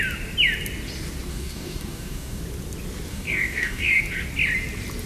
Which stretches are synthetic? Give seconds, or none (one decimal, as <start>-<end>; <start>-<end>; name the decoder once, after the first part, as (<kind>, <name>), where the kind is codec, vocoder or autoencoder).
1.3-2.4 (codec, DAC); 3.1-4.0